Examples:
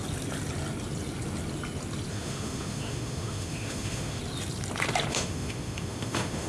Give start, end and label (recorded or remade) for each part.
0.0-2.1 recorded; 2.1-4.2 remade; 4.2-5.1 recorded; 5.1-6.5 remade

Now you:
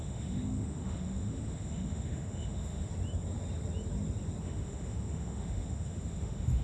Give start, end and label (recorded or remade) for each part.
0.0-2.9 remade; 2.9-4.4 recorded; 4.4-6.6 remade

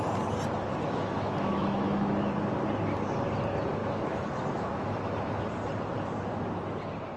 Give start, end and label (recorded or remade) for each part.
0.0-0.7 recorded; 0.7-2.3 remade; 2.3-3.8 recorded; 3.8-5.4 remade; 5.4-7.2 recorded